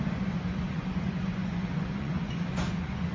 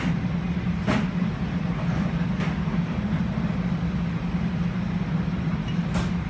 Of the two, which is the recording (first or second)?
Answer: second